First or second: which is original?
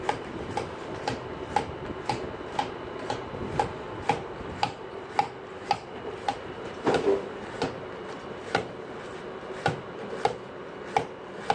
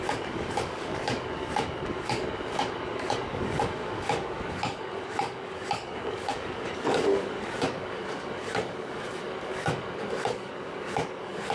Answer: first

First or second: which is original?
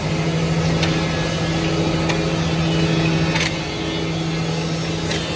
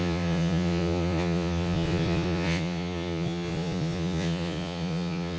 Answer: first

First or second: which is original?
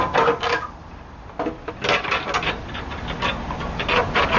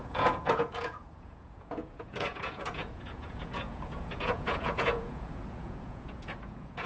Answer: first